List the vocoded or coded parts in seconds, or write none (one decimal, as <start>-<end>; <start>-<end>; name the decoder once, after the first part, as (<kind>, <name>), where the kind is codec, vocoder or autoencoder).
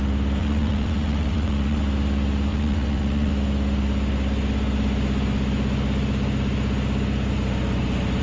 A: 0.4-1.8 (vocoder, WaveNeXt); 2.5-3.3